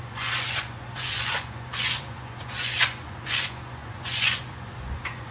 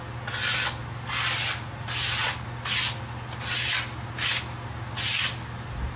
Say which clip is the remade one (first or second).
first